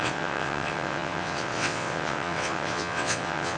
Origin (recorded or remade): remade